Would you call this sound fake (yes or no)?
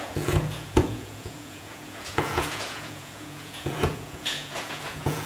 yes